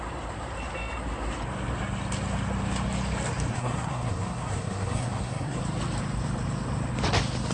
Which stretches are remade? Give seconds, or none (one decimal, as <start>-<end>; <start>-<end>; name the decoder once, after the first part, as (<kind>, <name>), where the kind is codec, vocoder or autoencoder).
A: 3.5-5.6 (codec, SNAC)